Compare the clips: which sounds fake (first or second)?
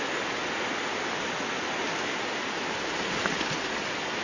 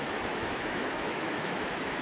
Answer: second